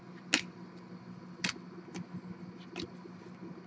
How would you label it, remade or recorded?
recorded